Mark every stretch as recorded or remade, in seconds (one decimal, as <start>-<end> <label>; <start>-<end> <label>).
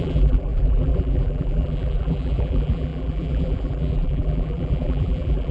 0.0-5.5 remade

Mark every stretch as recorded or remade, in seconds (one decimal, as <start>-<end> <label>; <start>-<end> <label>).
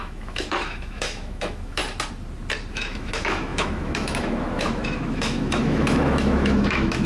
0.0-1.8 remade; 1.8-2.7 recorded; 2.7-7.1 remade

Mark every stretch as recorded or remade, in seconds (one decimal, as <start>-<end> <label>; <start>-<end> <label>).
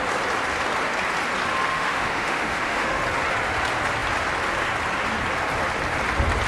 0.0-1.7 recorded; 1.7-3.0 remade; 3.0-6.5 recorded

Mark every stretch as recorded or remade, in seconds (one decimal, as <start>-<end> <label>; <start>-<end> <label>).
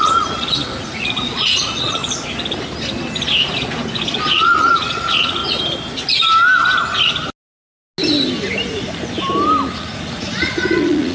0.0-2.0 remade; 2.0-4.3 recorded; 4.3-5.4 remade; 5.4-9.7 recorded; 9.7-11.1 remade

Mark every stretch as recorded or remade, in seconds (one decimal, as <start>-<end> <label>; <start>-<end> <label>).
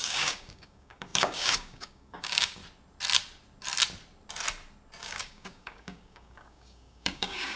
0.0-2.6 remade; 2.6-5.0 recorded; 5.0-7.6 remade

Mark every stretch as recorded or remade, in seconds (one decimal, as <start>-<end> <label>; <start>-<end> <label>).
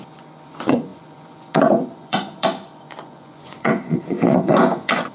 0.0-5.1 remade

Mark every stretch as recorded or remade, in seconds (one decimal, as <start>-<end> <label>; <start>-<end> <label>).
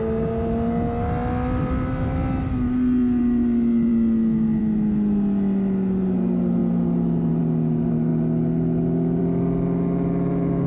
0.0-10.7 recorded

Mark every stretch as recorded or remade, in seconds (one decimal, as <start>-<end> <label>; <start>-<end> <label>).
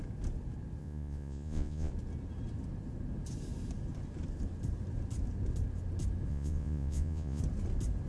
0.0-0.8 recorded; 0.8-1.9 remade; 1.9-6.3 recorded; 6.3-7.4 remade; 7.4-8.1 recorded